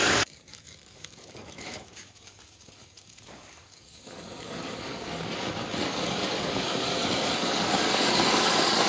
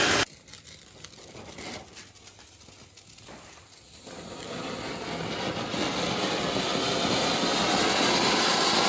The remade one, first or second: first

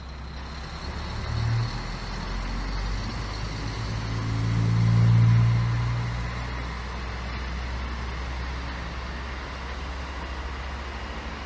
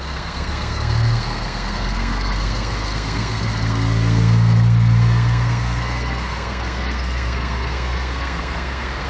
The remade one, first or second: second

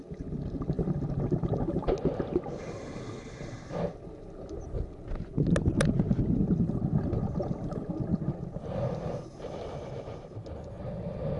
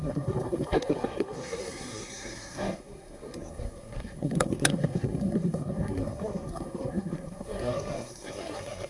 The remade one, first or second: second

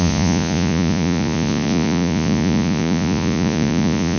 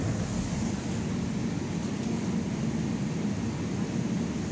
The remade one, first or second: first